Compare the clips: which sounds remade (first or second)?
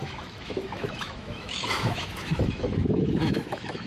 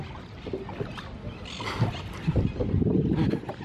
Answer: first